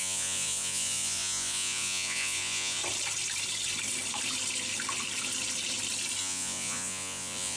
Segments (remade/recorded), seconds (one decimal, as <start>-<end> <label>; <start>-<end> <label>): 0.0-2.8 remade; 2.8-6.2 recorded; 6.2-7.6 remade